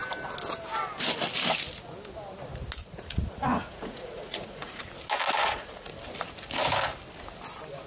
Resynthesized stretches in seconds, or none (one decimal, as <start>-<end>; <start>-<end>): 2.8-4.8; 5.4-5.9